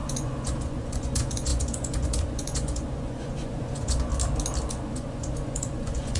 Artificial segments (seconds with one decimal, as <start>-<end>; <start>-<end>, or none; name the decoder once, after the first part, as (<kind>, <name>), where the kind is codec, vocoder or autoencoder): 0.0-4.1 (vocoder, Vocos); 4.7-6.2